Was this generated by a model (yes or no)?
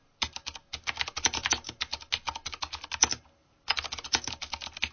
no